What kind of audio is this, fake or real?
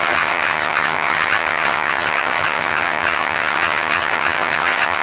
fake